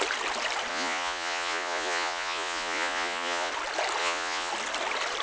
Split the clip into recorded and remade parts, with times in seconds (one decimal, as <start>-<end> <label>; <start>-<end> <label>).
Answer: 0.0-0.7 recorded; 0.7-3.5 remade; 3.5-4.0 recorded; 4.0-4.5 remade; 4.5-5.2 recorded